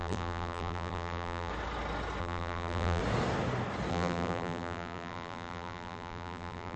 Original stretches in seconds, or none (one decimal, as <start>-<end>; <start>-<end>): 1.5-2.2; 3.0-3.9